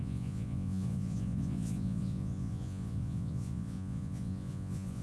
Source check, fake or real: fake